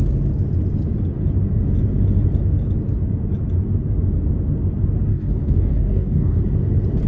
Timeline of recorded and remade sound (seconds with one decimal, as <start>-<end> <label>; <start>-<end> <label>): 0.0-5.1 recorded; 5.1-6.4 remade; 6.4-7.1 recorded